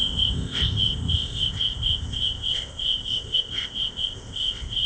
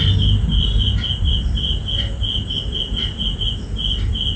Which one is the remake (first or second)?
first